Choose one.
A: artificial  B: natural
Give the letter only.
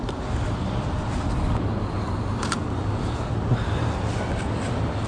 B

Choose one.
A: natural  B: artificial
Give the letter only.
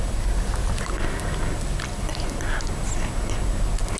A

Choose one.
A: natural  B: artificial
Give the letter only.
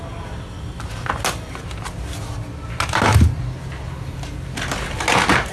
A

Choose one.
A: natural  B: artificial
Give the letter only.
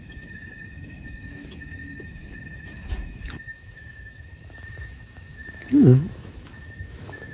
B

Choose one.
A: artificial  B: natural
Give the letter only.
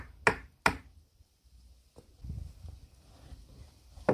B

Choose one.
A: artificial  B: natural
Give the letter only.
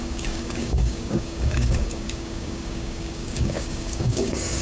A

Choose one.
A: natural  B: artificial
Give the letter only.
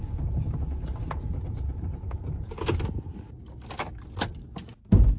A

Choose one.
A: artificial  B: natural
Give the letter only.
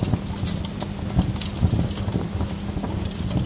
B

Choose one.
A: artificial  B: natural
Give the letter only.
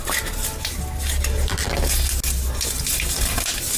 B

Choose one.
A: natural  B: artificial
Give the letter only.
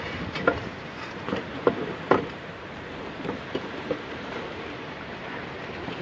B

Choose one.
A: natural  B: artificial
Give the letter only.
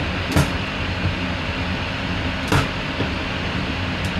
A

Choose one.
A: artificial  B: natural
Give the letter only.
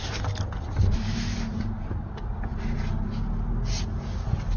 B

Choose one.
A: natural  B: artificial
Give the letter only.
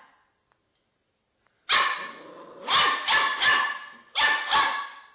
A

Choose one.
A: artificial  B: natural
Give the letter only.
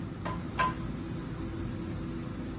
B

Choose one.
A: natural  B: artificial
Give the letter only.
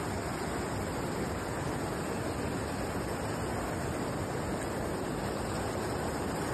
A